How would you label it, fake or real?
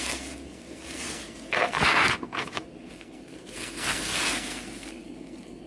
fake